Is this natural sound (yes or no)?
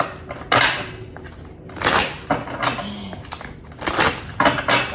yes